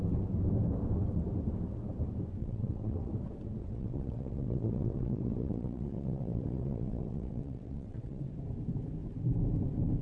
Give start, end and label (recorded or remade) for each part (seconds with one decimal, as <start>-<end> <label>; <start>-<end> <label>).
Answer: 0.0-2.4 recorded; 2.4-3.1 remade; 3.1-3.6 recorded; 3.6-8.3 remade; 8.3-10.0 recorded